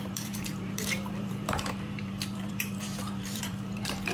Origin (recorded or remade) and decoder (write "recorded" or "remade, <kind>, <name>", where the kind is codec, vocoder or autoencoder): remade, vocoder, BigVGAN v2